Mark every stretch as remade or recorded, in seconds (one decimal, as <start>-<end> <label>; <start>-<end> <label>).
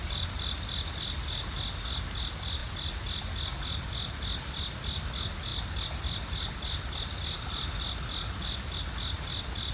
0.0-9.7 recorded